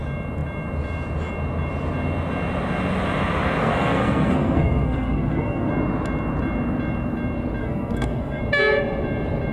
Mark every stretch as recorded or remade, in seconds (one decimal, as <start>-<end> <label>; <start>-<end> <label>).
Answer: 0.0-3.6 recorded; 3.6-5.7 remade; 5.7-7.6 recorded; 7.6-8.4 remade; 8.4-9.5 recorded